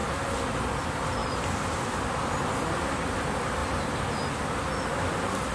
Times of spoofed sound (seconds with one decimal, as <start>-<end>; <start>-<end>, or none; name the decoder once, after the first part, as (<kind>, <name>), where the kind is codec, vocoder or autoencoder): 0.7-1.2 (vocoder, BigVGAN v2); 2.0-3.6; 4.6-5.5